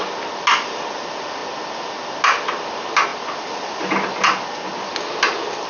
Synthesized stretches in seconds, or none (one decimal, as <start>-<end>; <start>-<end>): none